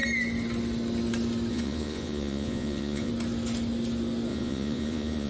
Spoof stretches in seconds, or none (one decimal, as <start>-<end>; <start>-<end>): 1.5-3.1; 4.3-5.3